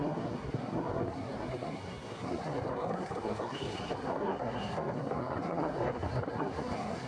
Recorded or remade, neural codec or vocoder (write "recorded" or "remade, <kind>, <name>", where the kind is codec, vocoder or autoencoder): remade, codec, SNAC